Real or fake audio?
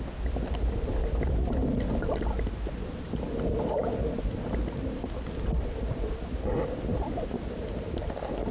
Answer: real